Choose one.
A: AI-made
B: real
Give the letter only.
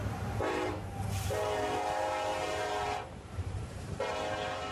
A